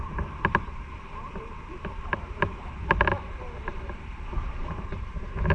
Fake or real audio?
fake